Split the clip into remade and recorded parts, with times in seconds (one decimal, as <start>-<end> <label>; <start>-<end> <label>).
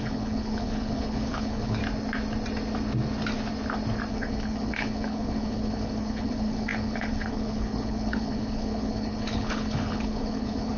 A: 0.0-1.8 remade; 1.8-4.1 recorded; 4.1-10.8 remade